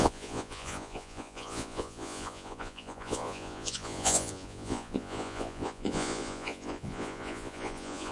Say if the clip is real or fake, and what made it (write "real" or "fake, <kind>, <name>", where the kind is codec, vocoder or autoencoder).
fake, vocoder, Vocos